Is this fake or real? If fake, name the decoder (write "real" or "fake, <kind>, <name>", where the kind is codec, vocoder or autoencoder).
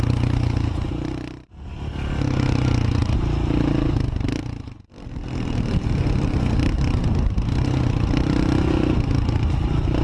real